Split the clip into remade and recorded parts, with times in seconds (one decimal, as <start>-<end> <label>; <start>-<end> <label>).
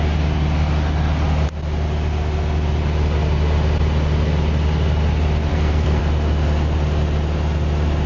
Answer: 0.0-5.5 recorded; 5.5-6.0 remade; 6.0-8.1 recorded